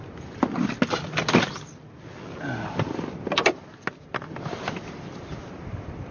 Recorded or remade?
recorded